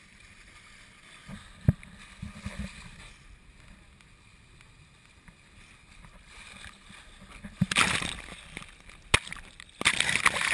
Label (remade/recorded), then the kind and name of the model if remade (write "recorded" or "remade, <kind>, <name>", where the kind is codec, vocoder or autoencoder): recorded